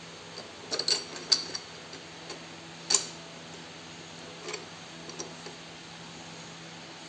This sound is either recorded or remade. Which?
recorded